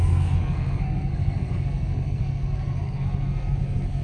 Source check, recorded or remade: remade